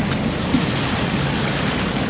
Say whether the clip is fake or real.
real